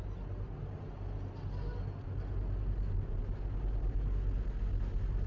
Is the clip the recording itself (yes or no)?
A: yes